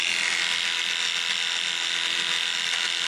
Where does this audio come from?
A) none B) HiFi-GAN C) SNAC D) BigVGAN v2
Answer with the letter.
A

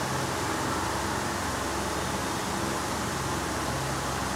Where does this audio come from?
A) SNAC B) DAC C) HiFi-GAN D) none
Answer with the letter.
D